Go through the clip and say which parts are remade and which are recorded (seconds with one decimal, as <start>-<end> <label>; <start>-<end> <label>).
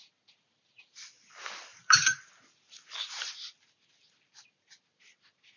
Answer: 0.0-1.7 recorded; 1.7-2.3 remade; 2.3-5.6 recorded